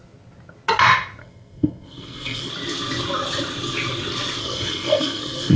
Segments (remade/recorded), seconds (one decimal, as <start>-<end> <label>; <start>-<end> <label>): 0.0-1.2 recorded; 1.2-2.5 remade; 2.5-4.4 recorded; 4.4-5.6 remade